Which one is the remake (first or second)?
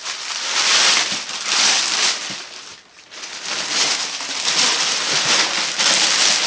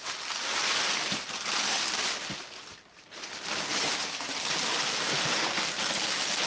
second